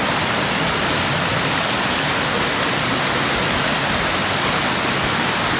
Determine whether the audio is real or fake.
real